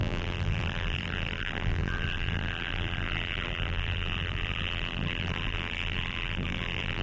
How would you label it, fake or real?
fake